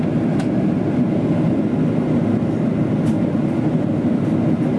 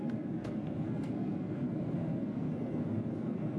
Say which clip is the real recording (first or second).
first